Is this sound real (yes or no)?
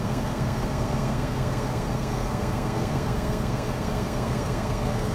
no